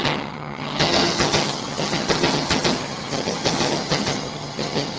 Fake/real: fake